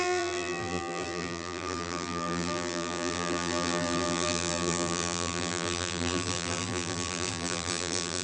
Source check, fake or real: fake